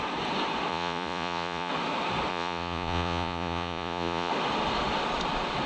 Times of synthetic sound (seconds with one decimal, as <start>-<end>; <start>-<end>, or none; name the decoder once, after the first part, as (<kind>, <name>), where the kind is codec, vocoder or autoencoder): 0.7-1.7 (vocoder, Vocos); 2.3-4.3

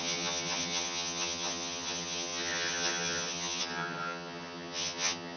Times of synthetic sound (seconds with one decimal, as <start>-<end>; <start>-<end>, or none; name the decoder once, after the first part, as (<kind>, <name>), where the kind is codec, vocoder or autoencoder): 0.0-5.4 (vocoder, HiFi-GAN)